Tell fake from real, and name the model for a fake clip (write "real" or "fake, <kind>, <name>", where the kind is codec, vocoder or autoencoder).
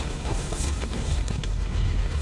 fake, codec, SNAC